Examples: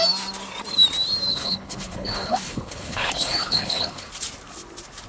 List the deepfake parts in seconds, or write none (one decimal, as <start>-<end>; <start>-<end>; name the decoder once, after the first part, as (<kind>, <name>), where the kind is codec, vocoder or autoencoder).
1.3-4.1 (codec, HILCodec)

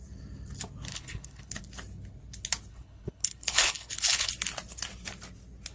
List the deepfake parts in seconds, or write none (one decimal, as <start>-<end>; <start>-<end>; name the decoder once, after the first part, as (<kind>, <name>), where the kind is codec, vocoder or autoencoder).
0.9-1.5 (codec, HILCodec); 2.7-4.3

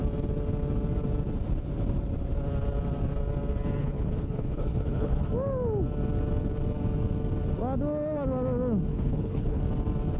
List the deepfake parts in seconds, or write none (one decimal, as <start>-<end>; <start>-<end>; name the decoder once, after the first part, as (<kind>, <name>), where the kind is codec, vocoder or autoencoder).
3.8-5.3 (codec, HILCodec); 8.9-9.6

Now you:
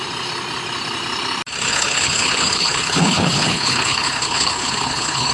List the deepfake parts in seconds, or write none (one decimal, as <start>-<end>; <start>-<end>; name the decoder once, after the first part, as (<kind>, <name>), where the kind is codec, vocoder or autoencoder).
1.7-5.3 (codec, HILCodec)

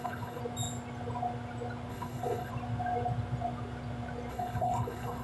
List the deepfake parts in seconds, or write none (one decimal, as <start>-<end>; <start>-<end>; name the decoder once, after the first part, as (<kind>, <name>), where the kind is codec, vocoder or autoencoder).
0.0-0.4 (codec, HILCodec); 1.9-2.5; 4.3-5.2

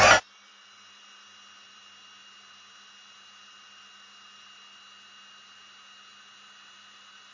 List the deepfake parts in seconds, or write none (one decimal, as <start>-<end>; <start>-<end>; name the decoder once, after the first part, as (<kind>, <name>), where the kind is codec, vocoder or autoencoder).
none